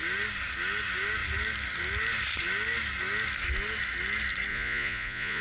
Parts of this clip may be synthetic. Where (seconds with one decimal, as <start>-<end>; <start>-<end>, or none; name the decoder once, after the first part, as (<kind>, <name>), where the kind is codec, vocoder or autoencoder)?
4.5-5.4 (vocoder, Vocos)